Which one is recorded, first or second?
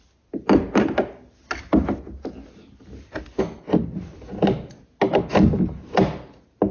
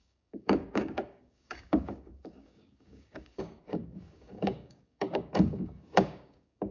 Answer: first